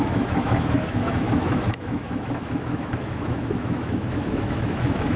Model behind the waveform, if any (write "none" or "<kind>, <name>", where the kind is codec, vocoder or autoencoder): autoencoder, DAC-VAE